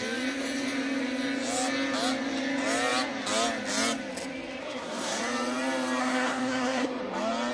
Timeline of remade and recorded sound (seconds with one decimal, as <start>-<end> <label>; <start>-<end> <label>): 0.0-4.6 recorded; 4.6-5.2 remade; 5.2-6.0 recorded; 6.0-7.0 remade; 7.0-7.5 recorded